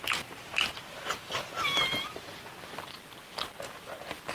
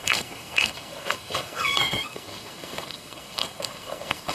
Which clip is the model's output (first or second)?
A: second